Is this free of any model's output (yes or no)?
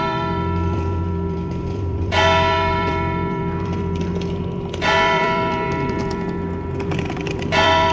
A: no